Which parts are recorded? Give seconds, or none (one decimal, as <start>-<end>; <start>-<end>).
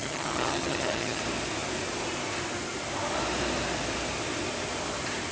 1.2-5.3